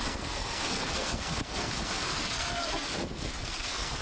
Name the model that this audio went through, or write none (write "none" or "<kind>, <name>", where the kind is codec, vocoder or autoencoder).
codec, SNAC